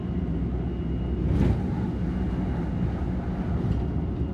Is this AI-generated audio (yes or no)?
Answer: no